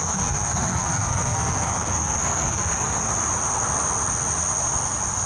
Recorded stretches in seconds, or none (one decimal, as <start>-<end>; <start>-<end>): 3.1-5.3